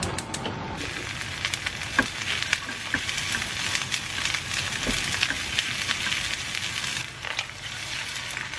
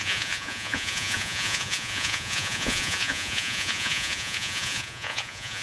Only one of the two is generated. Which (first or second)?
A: second